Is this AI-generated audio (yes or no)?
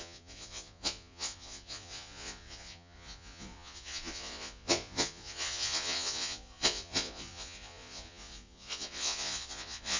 yes